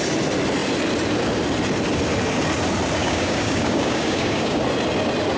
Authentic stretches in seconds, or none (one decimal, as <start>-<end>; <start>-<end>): 0.0-3.0; 4.6-5.4

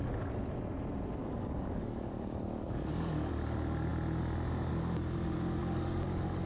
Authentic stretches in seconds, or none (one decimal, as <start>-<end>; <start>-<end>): 0.0-1.2; 3.3-5.6